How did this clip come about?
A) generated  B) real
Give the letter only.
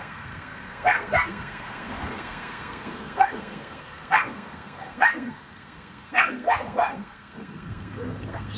A